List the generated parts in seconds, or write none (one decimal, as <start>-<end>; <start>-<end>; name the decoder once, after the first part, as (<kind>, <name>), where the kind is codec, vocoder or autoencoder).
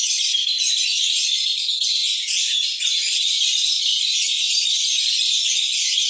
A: 0.0-6.1 (vocoder, BigVGAN v2)